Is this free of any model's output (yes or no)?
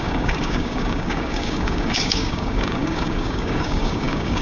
no